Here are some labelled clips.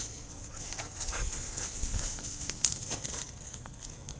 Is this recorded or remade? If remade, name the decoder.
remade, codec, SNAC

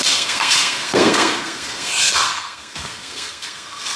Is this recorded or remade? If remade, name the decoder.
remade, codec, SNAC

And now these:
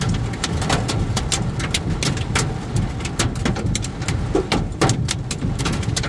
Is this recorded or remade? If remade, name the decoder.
recorded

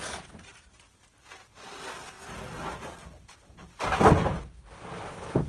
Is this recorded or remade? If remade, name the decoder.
recorded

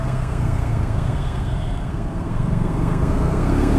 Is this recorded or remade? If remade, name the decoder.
remade, codec, SNAC